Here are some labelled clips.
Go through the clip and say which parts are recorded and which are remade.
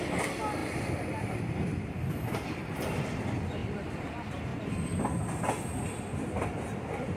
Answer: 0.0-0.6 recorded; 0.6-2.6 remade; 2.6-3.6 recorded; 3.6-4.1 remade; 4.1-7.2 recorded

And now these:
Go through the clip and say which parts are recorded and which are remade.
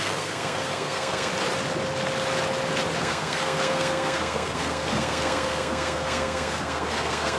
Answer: 0.0-1.3 remade; 1.3-3.0 recorded; 3.0-7.4 remade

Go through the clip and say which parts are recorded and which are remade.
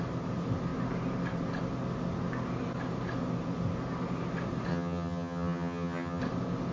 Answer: 0.0-4.7 recorded; 4.7-6.2 remade; 6.2-6.7 recorded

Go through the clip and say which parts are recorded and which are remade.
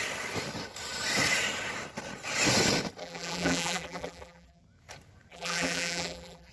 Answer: 0.0-3.0 recorded; 3.0-4.6 remade; 4.6-5.3 recorded; 5.3-6.5 remade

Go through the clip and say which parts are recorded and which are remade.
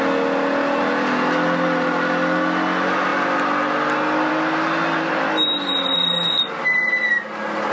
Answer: 0.0-7.7 recorded